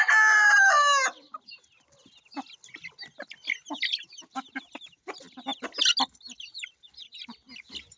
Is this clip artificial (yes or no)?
no